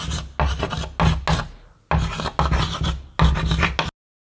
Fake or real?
real